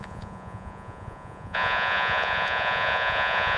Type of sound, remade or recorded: remade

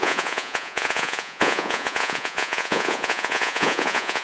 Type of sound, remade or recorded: remade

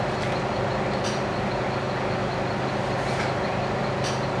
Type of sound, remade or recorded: recorded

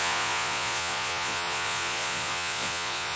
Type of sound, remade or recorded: remade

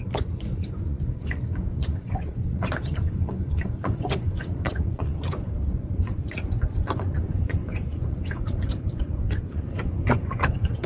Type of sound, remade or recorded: remade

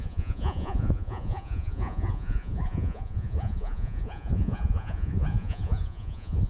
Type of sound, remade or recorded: remade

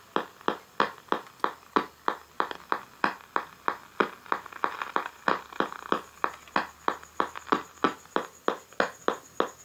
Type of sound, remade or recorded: recorded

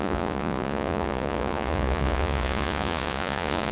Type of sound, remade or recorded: remade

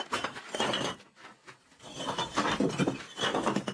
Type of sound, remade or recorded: recorded